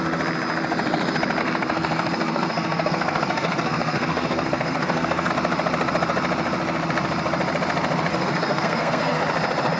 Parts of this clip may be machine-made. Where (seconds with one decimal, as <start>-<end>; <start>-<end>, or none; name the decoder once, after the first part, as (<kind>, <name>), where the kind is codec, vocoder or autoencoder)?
1.4-5.3 (codec, SNAC); 8.1-9.2